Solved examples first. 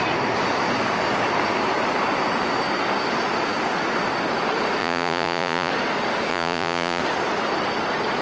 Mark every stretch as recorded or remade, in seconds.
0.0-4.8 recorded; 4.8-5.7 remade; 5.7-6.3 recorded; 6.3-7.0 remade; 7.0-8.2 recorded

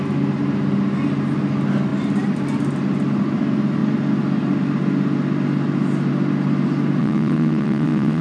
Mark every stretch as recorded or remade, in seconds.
0.0-7.0 recorded; 7.0-8.2 remade

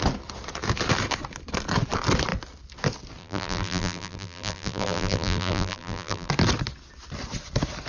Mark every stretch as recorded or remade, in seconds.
0.0-3.2 recorded; 3.2-6.3 remade; 6.3-7.9 recorded

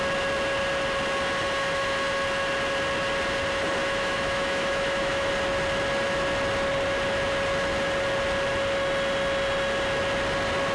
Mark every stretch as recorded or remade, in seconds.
0.0-3.8 recorded; 3.8-5.3 remade; 5.3-10.7 recorded